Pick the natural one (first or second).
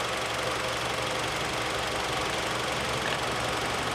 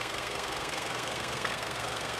first